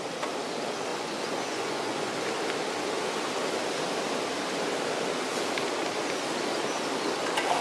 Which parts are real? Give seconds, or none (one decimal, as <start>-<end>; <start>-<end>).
0.0-0.9; 2.1-7.6